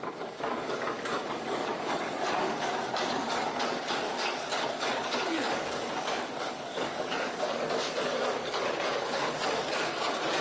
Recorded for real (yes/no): no